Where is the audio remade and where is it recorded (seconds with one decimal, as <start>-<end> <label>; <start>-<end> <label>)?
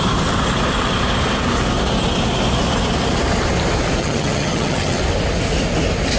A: 0.0-4.0 recorded; 4.0-5.0 remade; 5.0-6.2 recorded